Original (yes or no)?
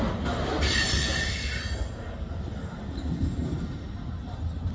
yes